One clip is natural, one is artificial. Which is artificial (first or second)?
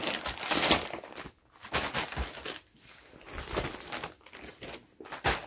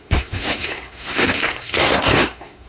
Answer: second